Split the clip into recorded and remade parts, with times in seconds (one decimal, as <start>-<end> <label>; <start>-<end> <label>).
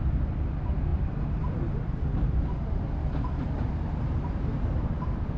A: 0.0-5.4 recorded